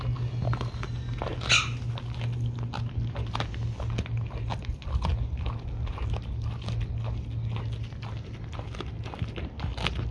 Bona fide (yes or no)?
yes